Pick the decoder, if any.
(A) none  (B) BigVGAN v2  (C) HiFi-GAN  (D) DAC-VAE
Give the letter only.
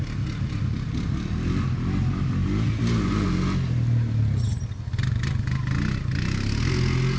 A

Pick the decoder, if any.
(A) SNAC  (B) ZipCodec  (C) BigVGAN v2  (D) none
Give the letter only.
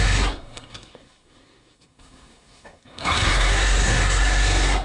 A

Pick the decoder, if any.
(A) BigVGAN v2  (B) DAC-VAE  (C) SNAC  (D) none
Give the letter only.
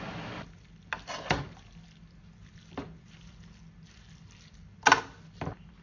D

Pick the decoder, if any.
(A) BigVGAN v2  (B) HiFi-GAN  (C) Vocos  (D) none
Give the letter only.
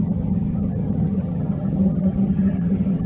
B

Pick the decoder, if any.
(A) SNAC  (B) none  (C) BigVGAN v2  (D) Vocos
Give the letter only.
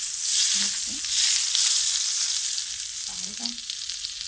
C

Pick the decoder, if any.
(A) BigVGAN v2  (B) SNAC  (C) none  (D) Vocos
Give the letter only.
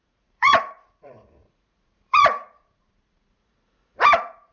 D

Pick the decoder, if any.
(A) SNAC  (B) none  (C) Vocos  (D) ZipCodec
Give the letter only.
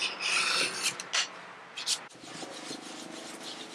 B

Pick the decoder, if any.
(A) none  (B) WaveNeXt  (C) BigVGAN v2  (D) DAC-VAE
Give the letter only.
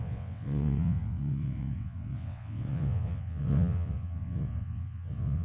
B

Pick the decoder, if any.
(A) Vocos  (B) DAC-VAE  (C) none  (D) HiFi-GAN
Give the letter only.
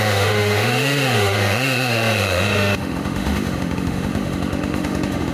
B